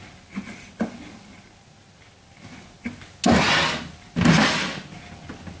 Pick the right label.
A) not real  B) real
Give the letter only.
B